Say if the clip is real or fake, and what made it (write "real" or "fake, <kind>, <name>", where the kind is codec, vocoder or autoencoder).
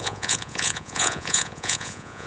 fake, vocoder, Vocos